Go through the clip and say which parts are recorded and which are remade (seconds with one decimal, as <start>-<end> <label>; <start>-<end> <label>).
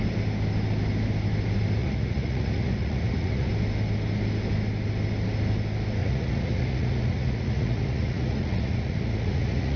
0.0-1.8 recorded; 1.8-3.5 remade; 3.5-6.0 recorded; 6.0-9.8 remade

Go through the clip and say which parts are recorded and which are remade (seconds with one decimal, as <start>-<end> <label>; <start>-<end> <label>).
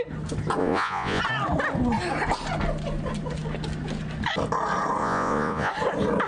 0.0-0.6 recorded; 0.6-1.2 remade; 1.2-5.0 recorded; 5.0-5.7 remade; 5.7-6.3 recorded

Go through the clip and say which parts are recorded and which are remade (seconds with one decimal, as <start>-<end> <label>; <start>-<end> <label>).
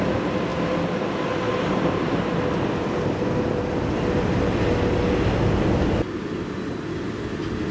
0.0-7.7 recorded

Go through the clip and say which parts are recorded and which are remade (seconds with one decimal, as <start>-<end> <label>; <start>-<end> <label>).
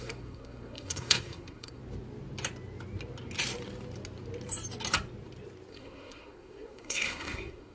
0.0-1.8 remade; 1.8-5.7 recorded; 5.7-7.7 remade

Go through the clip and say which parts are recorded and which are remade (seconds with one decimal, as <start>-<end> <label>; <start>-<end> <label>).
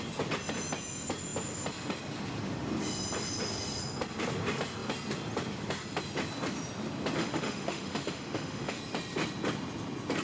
0.0-7.2 recorded; 7.2-8.8 remade; 8.8-10.2 recorded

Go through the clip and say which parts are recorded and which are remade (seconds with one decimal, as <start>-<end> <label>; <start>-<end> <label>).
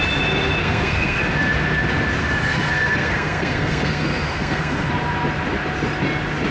0.0-0.6 recorded; 0.6-1.2 remade; 1.2-2.2 recorded; 2.2-4.9 remade; 4.9-6.5 recorded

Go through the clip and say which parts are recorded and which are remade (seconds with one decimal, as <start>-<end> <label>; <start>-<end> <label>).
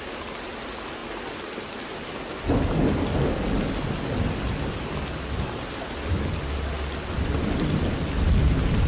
0.0-8.9 recorded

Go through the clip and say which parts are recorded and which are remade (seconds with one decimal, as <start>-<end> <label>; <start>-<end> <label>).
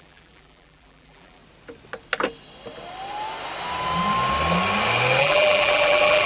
0.0-1.4 remade; 1.4-5.2 recorded; 5.2-6.3 remade